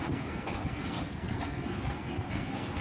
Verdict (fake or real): fake